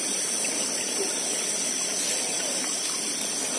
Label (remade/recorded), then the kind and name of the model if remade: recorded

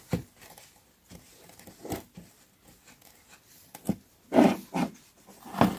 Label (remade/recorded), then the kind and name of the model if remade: recorded